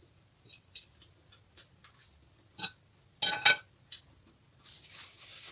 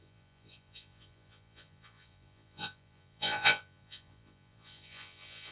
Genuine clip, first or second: first